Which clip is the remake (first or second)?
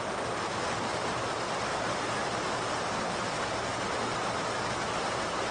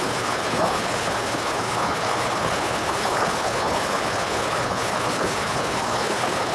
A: second